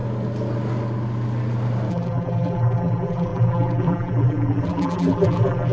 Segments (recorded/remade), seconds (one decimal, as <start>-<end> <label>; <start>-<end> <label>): 0.0-1.9 recorded; 1.9-5.7 remade